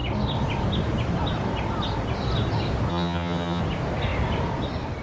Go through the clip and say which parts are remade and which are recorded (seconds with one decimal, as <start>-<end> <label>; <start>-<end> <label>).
0.0-2.9 recorded; 2.9-3.6 remade; 3.6-5.0 recorded